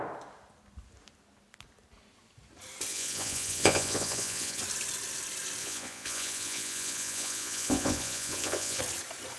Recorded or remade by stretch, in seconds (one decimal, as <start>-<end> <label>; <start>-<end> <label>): 0.0-2.9 recorded; 2.9-4.6 remade; 4.6-5.6 recorded; 5.6-8.8 remade; 8.8-9.4 recorded